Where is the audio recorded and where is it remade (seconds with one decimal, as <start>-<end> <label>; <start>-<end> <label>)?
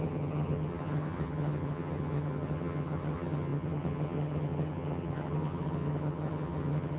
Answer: 0.0-7.0 remade